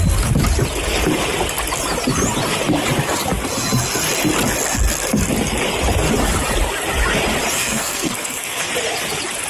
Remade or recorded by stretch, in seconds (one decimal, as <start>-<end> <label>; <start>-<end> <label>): 0.0-7.5 recorded; 7.5-8.7 remade; 8.7-9.5 recorded

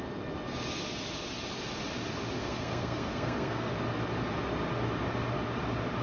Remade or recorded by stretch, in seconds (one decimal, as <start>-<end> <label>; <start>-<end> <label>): 0.0-2.4 recorded; 2.4-3.7 remade; 3.7-6.0 recorded

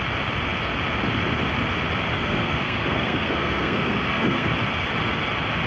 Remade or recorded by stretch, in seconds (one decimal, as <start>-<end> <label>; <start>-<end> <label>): 0.0-2.1 recorded; 2.1-4.5 remade; 4.5-5.7 recorded

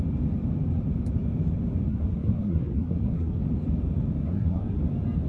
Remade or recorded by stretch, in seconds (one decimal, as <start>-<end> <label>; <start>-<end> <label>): 0.0-1.9 recorded; 1.9-3.4 remade; 3.4-4.2 recorded; 4.2-4.8 remade; 4.8-5.3 recorded